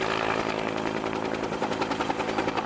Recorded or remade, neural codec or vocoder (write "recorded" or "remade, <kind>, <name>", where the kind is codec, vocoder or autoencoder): recorded